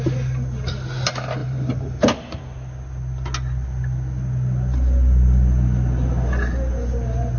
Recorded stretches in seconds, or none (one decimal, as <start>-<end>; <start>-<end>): 0.0-1.4; 2.4-7.4